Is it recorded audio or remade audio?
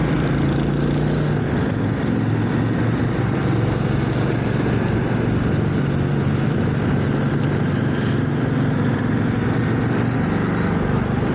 recorded